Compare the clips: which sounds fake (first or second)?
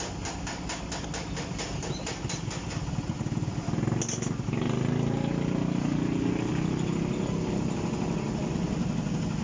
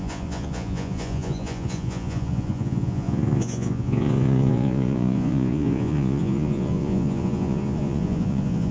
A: second